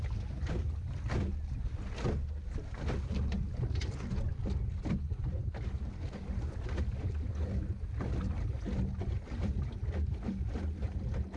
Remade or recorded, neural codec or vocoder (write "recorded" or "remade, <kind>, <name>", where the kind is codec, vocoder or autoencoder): recorded